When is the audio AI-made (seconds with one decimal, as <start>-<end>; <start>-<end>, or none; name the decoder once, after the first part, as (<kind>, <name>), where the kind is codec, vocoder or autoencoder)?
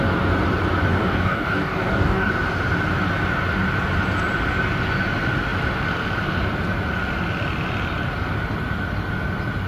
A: 0.9-2.3 (codec, DAC)